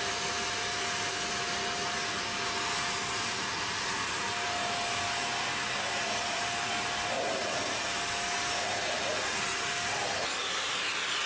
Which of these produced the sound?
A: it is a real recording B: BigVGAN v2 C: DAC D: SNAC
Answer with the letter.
A